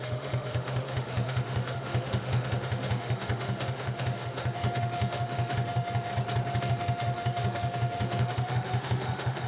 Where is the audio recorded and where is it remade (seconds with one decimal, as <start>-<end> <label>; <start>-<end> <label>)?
0.0-6.1 remade; 6.1-6.6 recorded; 6.6-9.5 remade